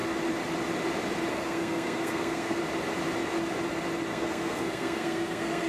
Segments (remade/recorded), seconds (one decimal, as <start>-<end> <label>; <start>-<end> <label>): 0.0-1.3 recorded; 1.3-2.6 remade; 2.6-4.1 recorded; 4.1-5.7 remade